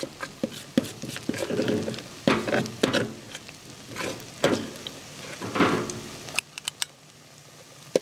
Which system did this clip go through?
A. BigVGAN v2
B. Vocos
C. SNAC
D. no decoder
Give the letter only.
D